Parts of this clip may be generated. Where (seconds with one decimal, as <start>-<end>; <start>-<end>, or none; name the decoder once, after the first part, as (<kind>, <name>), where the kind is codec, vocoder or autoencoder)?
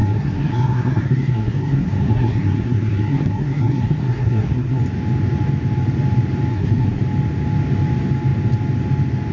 0.0-4.8 (codec, SNAC); 6.5-7.0